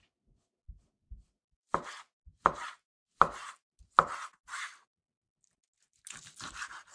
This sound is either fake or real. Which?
real